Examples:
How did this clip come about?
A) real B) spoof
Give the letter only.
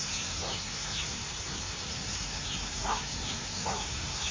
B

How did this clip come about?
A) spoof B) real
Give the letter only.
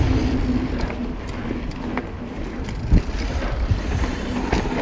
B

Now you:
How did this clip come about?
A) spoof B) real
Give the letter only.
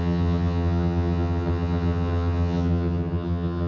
A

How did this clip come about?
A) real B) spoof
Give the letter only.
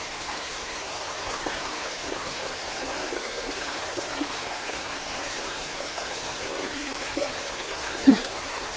B